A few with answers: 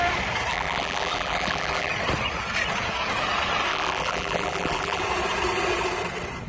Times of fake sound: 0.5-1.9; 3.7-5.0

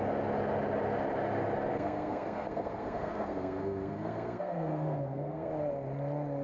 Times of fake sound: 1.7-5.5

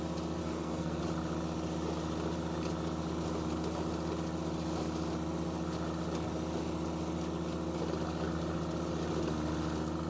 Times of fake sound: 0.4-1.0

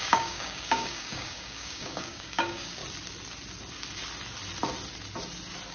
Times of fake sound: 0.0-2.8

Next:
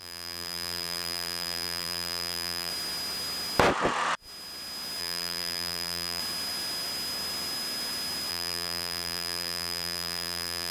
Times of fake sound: 0.0-2.7; 5.0-6.2; 8.3-10.7

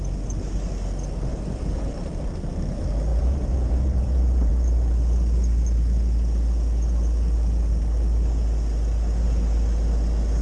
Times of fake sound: 1.3-2.1; 3.1-4.5

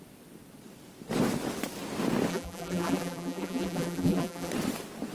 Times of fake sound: 2.3-4.5

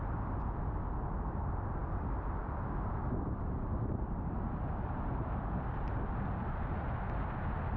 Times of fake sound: none